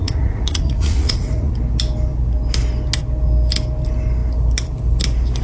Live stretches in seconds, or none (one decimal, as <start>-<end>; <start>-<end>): 1.5-5.4